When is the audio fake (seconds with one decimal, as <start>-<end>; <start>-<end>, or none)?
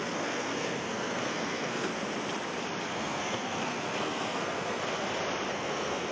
0.0-1.9; 2.9-4.8; 5.5-6.1